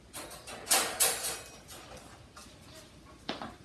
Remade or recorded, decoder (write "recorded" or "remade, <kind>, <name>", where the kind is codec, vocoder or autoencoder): recorded